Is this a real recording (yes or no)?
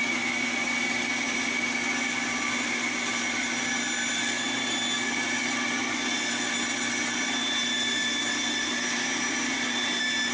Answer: yes